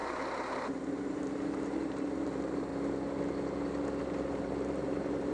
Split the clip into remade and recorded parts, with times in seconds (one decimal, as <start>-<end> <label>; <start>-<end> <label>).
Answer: 0.0-2.7 remade; 2.7-4.0 recorded; 4.0-5.3 remade